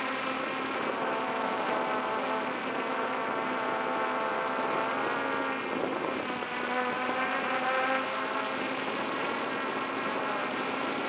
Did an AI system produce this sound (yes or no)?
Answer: no